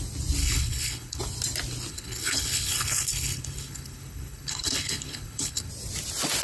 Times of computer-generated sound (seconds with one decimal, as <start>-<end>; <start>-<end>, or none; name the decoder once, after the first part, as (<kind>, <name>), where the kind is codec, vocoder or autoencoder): 0.4-1.2 (codec, HILCodec); 1.9-5.7